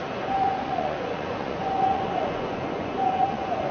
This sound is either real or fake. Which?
fake